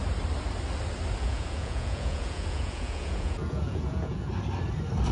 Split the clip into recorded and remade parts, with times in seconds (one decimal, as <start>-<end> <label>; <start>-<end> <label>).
0.0-1.2 recorded; 1.2-4.3 remade; 4.3-5.1 recorded